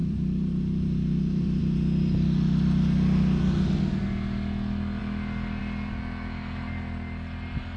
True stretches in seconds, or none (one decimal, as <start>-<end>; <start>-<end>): 1.6-7.8